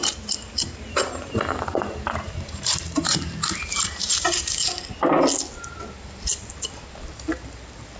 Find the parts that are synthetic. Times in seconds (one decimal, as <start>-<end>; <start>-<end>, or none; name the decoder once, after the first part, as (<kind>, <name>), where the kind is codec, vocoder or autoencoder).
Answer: 0.0-4.8 (vocoder, BigVGAN v2)